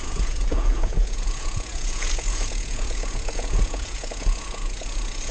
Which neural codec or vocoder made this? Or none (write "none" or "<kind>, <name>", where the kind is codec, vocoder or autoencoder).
vocoder, Vocos